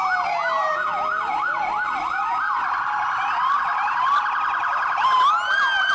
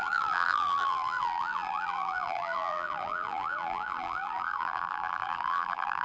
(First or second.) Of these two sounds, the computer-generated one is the second